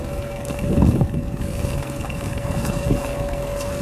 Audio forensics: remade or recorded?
remade